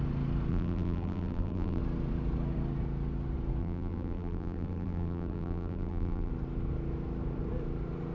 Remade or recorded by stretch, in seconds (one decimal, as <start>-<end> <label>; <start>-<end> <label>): 0.0-0.5 recorded; 0.5-1.8 remade; 1.8-3.6 recorded; 3.6-6.3 remade; 6.3-8.1 recorded

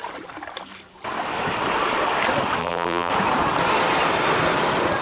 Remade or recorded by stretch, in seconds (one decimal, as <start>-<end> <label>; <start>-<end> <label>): 0.0-2.6 recorded; 2.6-3.1 remade; 3.1-5.0 recorded

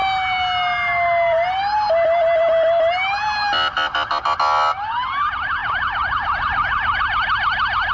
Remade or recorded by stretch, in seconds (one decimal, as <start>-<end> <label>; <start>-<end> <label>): 0.0-5.6 recorded; 5.6-7.0 remade; 7.0-7.9 recorded

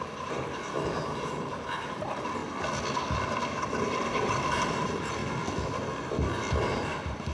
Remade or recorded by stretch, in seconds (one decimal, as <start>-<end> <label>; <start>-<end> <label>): 0.0-2.4 remade; 2.4-3.8 recorded; 3.8-5.2 remade; 5.2-6.6 recorded; 6.6-7.3 remade